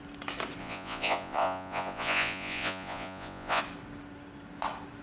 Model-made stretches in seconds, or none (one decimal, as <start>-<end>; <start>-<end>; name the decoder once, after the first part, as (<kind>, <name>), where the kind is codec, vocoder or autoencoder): 0.6-3.6 (vocoder, Vocos)